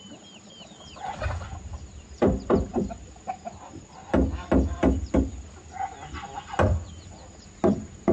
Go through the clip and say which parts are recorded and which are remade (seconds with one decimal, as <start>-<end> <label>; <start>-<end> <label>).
0.0-8.1 recorded